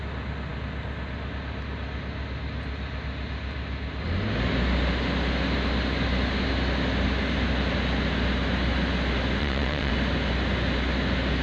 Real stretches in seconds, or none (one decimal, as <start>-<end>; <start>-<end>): 0.0-9.4; 9.9-11.4

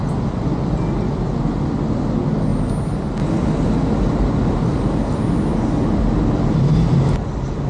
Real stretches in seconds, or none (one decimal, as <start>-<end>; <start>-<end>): 0.0-7.7

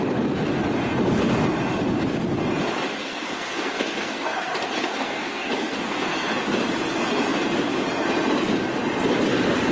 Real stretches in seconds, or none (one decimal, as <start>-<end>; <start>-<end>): 0.0-3.0; 6.3-9.7

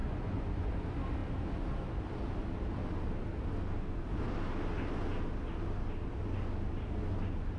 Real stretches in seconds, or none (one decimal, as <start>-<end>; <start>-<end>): 0.7-7.6

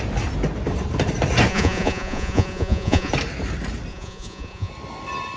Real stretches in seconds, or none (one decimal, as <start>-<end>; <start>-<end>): 0.0-1.5; 3.1-3.9; 4.7-5.4

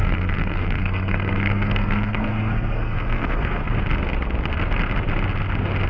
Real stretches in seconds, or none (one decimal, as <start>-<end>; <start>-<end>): 3.6-5.9

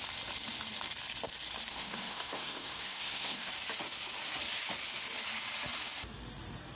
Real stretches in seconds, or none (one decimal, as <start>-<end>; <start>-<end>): 0.0-1.7; 3.5-6.8